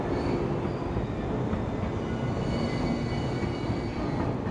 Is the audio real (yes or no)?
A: yes